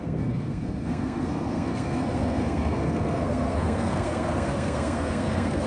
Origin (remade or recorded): remade